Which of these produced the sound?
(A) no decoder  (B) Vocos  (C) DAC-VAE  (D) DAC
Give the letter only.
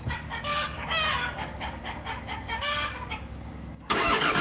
D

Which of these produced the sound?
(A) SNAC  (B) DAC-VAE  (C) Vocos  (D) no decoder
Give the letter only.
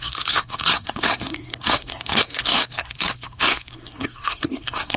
A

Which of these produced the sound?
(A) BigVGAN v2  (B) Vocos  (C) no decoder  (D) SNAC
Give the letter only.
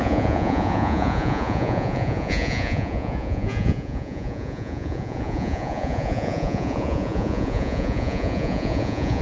B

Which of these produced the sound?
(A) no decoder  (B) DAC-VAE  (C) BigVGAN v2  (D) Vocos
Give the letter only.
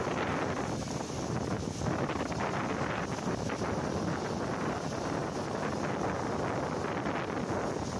A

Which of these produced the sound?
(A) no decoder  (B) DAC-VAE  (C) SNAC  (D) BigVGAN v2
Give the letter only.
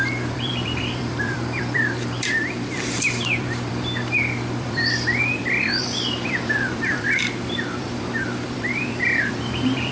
D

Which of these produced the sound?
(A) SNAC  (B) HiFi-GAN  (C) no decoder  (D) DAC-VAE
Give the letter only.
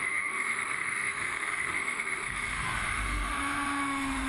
D